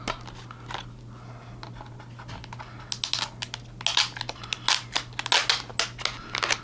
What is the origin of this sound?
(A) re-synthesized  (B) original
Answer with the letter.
B